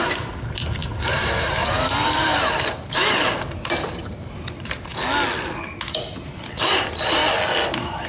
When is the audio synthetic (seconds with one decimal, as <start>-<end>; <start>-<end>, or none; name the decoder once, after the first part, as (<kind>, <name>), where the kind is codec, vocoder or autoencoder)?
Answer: 0.0-3.0 (vocoder, BigVGAN v2); 3.7-4.9; 6.8-7.2